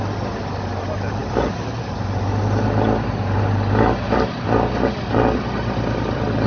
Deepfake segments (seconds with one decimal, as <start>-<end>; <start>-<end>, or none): none